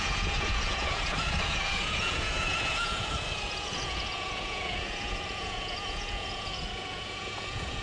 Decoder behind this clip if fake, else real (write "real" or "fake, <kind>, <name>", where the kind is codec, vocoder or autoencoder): fake, vocoder, Vocos